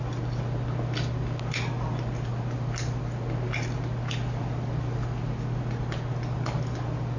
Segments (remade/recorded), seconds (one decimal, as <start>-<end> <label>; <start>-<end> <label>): 0.0-7.2 recorded